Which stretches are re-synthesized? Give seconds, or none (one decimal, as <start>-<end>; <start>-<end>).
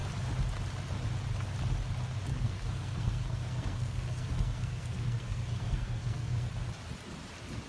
2.3-6.5